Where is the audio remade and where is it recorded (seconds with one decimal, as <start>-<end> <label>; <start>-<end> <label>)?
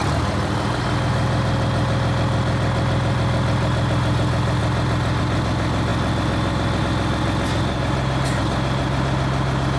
0.0-9.8 recorded